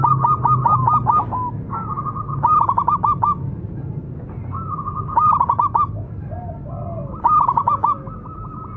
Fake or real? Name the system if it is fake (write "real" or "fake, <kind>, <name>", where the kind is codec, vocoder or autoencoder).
real